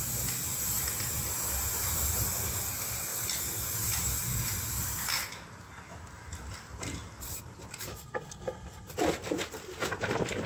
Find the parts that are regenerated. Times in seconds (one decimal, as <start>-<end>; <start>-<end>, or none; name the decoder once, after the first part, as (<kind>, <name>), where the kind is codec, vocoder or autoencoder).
7.9-8.9 (codec, SNAC)